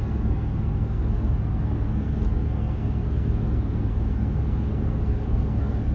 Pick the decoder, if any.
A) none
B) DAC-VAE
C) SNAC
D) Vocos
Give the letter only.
C